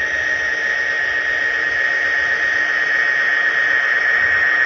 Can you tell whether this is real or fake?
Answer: real